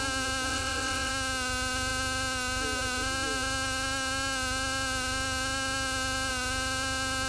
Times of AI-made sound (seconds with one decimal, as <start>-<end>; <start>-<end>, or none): 0.5-1.1